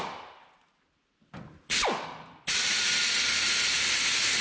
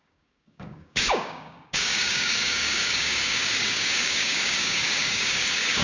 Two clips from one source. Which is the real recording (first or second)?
first